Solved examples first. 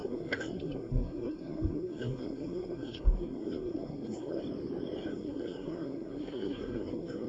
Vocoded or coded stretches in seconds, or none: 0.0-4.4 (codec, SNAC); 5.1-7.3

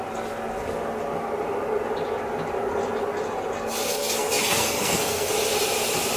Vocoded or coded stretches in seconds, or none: 3.9-5.3 (codec, SNAC)

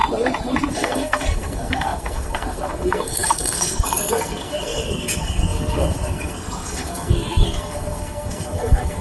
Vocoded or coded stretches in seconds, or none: 0.7-9.0 (codec, SNAC)